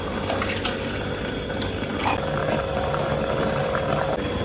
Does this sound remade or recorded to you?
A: recorded